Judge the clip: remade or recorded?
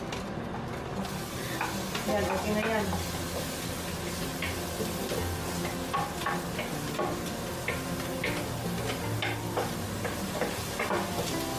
recorded